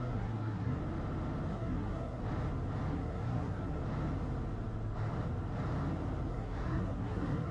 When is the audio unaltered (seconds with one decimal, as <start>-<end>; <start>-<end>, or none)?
0.8-1.5; 2.2-2.9; 3.8-6.3